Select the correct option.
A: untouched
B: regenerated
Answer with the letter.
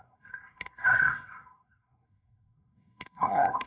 B